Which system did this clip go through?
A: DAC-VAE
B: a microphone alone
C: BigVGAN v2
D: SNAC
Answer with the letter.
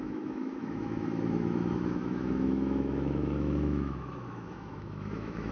A